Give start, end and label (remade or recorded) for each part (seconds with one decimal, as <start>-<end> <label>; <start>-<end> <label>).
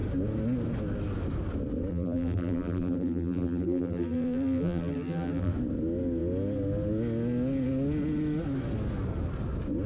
0.0-1.9 recorded; 1.9-5.5 remade; 5.5-9.9 recorded